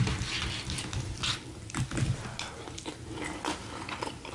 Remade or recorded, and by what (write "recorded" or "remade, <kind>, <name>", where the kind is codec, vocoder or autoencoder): recorded